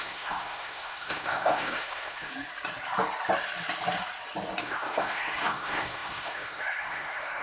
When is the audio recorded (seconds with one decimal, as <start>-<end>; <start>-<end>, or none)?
2.3-4.6